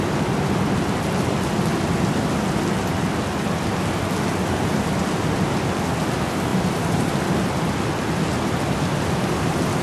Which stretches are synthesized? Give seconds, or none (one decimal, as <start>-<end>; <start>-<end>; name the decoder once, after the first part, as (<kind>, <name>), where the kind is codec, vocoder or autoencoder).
6.5-7.1 (vocoder, BigVGAN v2)